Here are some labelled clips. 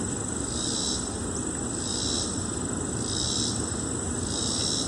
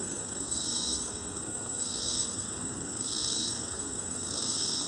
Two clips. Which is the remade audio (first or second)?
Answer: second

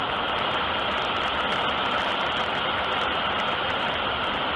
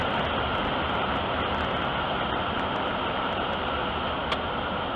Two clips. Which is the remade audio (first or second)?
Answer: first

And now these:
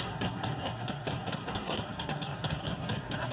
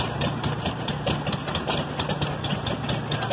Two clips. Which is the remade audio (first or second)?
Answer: first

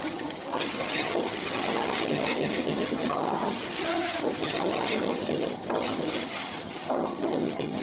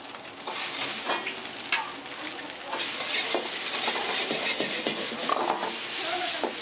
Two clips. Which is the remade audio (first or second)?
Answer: first